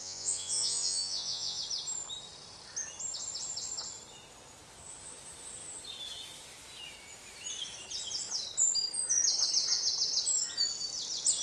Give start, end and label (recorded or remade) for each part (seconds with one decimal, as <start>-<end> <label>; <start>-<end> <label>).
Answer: 0.0-1.6 remade; 1.6-11.4 recorded